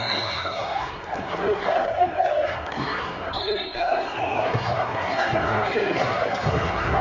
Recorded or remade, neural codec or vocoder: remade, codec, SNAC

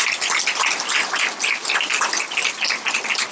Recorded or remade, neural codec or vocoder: recorded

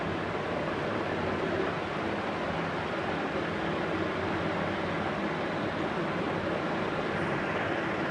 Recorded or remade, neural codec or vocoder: recorded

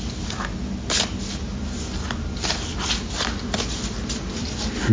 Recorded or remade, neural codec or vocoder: recorded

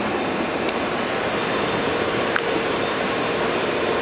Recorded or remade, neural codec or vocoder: remade, vocoder, BigVGAN v2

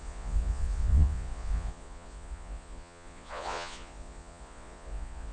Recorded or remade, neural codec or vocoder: remade, vocoder, Vocos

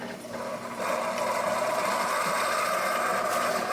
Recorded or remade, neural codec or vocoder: remade, vocoder, BigVGAN v2